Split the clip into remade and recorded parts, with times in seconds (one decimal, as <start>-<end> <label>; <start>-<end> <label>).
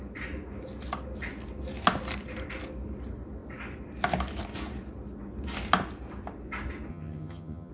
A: 0.0-6.9 recorded; 6.9-7.7 remade